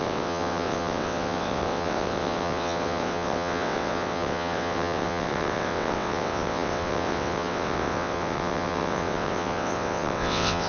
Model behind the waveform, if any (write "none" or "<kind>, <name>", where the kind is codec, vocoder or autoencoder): vocoder, WaveNeXt